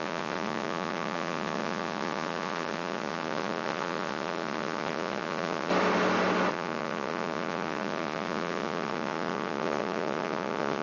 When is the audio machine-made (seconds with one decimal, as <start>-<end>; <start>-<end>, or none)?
0.0-5.7; 6.5-10.8